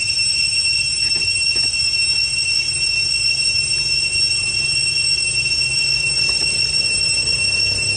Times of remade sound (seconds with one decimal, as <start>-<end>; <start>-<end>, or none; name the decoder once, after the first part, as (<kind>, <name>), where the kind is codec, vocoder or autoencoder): none